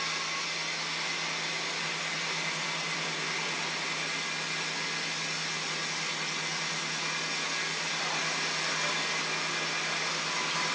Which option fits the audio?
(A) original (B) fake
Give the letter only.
A